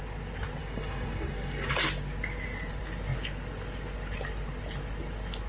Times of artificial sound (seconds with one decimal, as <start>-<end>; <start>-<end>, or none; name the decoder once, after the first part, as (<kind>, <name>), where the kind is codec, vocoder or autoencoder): 0.6-1.7 (codec, DAC)